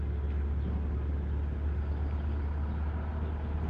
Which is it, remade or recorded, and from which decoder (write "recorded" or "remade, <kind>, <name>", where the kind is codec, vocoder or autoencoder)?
recorded